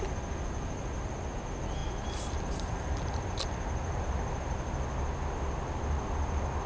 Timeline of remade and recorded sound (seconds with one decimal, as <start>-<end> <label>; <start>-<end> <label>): 0.0-6.7 recorded